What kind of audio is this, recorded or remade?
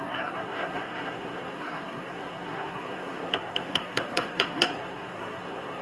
remade